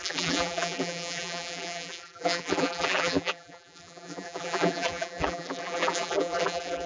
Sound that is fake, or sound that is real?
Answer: fake